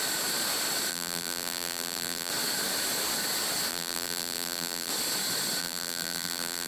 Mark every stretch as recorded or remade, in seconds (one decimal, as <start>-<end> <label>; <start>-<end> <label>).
0.0-0.9 recorded; 0.9-2.3 remade; 2.3-3.7 recorded; 3.7-4.9 remade; 4.9-5.6 recorded; 5.6-6.7 remade